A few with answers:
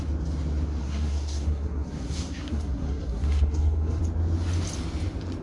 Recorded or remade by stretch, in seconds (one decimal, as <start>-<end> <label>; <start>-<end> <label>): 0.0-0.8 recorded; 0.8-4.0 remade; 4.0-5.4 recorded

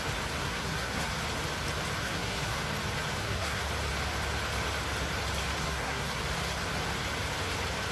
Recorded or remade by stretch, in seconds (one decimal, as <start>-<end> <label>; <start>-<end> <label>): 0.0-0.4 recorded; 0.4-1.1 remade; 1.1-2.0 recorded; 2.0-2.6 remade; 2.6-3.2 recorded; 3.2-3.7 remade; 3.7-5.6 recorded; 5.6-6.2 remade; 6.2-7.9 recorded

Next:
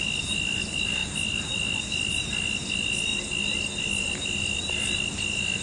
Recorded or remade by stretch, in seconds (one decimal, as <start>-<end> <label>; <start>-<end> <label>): 0.0-5.6 recorded

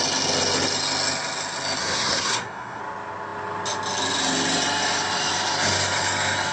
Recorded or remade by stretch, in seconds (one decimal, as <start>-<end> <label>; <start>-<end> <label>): 0.0-1.8 recorded; 1.8-2.8 remade; 2.8-6.5 recorded

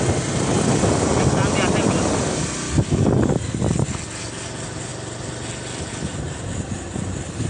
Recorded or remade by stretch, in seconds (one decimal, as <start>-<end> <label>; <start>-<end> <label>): 0.0-7.5 recorded

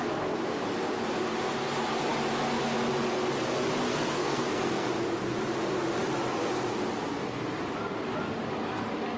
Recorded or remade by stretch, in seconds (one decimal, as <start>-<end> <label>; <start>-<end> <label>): 0.0-3.9 recorded; 3.9-4.9 remade; 4.9-9.2 recorded

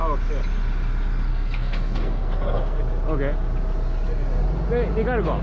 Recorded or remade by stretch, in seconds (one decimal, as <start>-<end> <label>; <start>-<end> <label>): 0.0-1.3 recorded; 1.3-2.8 remade; 2.8-5.4 recorded

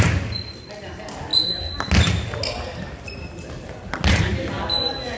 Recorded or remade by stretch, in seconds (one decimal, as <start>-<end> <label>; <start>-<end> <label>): 0.0-5.2 recorded